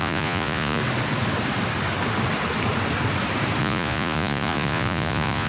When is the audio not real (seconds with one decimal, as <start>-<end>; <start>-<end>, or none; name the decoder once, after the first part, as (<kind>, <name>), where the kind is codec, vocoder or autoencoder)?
0.0-0.8 (vocoder, Vocos); 3.6-5.5